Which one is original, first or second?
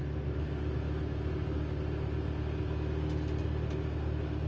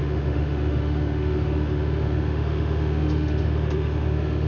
first